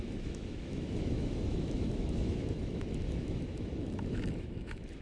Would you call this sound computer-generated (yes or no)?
yes